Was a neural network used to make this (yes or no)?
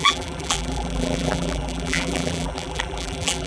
yes